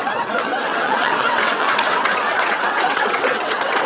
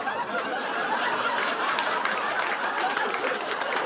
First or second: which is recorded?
second